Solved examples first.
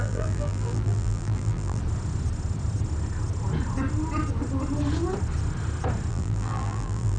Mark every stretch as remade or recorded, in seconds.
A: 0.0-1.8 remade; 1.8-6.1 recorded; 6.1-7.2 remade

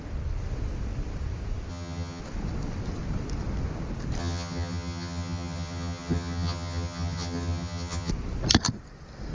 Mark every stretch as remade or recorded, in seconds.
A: 0.0-1.7 recorded; 1.7-2.2 remade; 2.2-4.2 recorded; 4.2-8.1 remade; 8.1-9.3 recorded

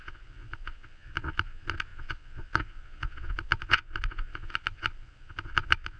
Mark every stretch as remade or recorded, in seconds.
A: 0.0-6.0 remade